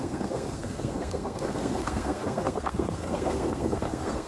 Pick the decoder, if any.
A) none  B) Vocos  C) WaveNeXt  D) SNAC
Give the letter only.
D